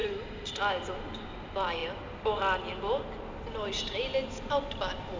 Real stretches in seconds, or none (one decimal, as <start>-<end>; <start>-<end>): 0.6-5.2